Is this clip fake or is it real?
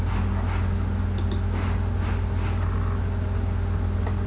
real